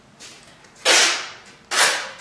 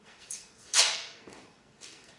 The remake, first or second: second